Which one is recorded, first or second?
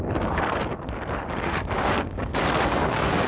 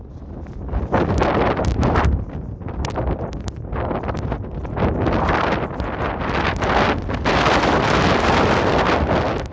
second